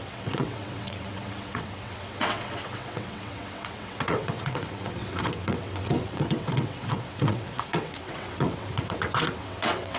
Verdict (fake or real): fake